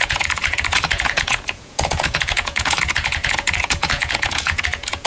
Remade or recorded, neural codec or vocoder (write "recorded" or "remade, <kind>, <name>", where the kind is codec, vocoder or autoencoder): remade, vocoder, Vocos